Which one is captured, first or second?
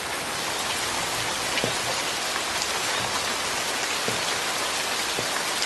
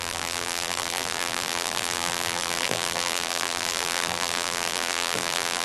first